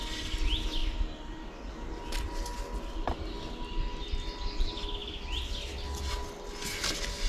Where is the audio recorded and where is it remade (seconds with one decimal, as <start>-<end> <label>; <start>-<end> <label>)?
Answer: 0.0-0.8 recorded; 0.8-1.7 remade; 1.7-7.3 recorded